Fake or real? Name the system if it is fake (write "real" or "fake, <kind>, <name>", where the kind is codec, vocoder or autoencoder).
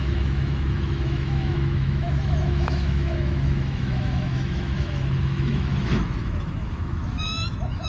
fake, autoencoder, DAC-VAE